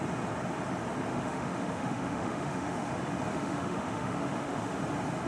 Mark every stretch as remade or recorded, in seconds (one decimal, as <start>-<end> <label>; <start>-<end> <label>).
0.0-1.1 recorded; 1.1-2.9 remade; 2.9-3.3 recorded; 3.3-4.8 remade; 4.8-5.3 recorded